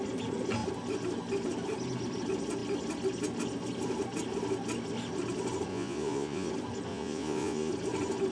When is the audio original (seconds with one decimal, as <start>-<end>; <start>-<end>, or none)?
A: 0.0-5.7; 6.5-6.9; 7.7-8.3